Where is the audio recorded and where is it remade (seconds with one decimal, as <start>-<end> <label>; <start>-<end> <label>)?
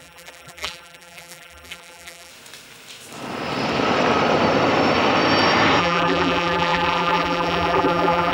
0.0-2.3 remade; 2.3-5.8 recorded; 5.8-8.3 remade